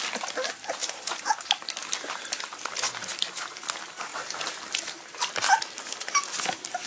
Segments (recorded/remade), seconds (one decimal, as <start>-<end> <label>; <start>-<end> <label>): 0.0-0.8 recorded; 0.8-1.4 remade; 1.4-4.1 recorded; 4.1-5.3 remade; 5.3-6.9 recorded